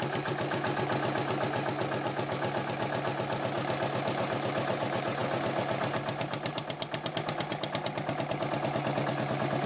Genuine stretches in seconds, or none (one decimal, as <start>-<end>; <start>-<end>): 0.0-9.7